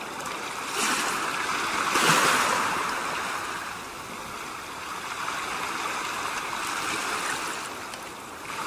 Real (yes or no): yes